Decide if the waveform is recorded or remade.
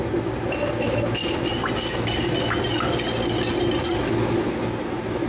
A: recorded